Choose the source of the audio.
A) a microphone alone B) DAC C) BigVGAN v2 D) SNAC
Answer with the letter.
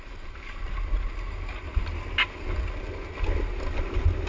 A